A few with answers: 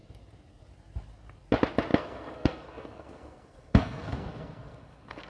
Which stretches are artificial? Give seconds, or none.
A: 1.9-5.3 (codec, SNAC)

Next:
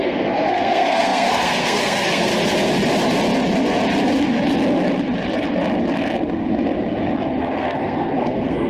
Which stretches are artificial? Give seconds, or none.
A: 0.0-2.3 (codec, SNAC); 7.4-8.7

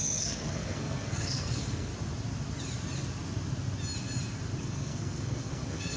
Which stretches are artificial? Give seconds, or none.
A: 0.0-1.9 (codec, SNAC); 4.6-6.0

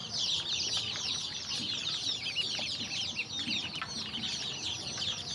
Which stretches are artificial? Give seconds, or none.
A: none

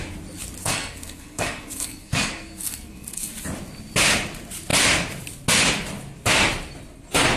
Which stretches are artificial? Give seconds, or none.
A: 0.6-3.3 (codec, SNAC)

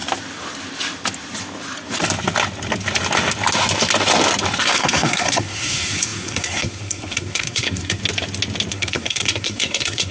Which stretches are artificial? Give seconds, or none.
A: 4.6-8.0 (codec, SNAC); 8.7-10.1